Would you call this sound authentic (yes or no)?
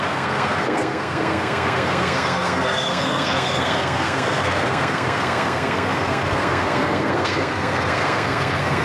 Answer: no